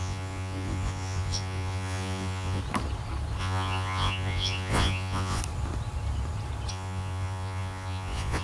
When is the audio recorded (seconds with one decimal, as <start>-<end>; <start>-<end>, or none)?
2.6-3.4; 5.4-6.7